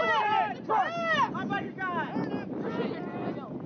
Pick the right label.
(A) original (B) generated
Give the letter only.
A